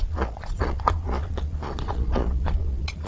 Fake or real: fake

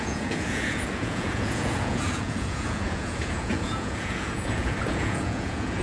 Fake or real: fake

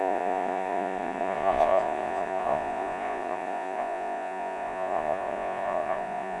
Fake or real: fake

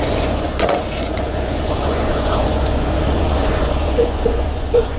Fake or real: fake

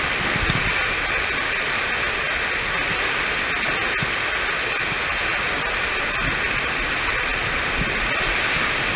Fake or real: real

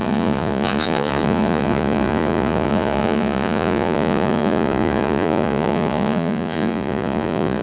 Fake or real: fake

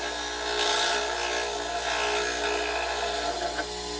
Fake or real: real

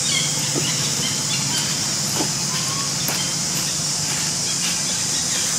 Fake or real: real